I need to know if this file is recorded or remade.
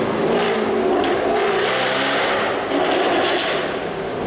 recorded